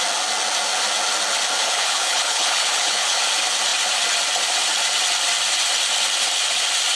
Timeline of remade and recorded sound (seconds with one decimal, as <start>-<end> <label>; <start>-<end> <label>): 0.0-1.6 recorded; 1.6-3.2 remade; 3.2-7.0 recorded